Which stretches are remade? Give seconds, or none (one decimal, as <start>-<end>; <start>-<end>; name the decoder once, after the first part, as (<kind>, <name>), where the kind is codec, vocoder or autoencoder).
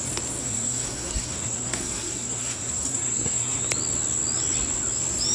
0.4-3.6 (codec, SNAC)